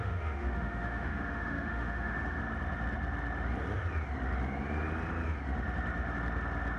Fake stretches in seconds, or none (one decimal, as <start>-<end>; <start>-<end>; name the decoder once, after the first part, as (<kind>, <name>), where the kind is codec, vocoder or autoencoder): 0.0-2.4 (autoencoder, DAC-VAE)